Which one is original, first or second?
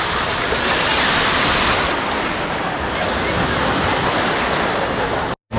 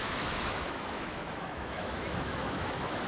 first